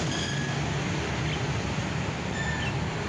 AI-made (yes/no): no